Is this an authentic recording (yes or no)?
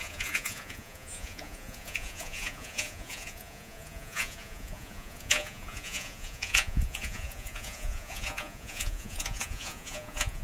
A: no